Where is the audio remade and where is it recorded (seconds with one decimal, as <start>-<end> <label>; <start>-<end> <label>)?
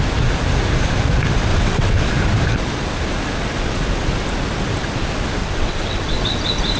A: 0.0-1.5 recorded; 1.5-2.1 remade; 2.1-5.4 recorded; 5.4-6.2 remade; 6.2-6.8 recorded